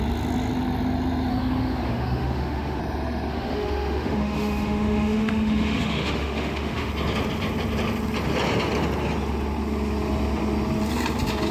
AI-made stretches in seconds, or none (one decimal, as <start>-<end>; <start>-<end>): 1.3-2.8; 3.3-6.9